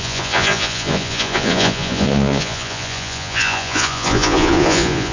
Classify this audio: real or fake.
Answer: fake